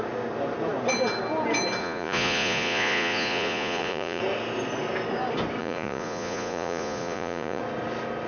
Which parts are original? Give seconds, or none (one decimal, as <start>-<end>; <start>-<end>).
0.0-1.8; 4.2-5.6; 7.6-8.3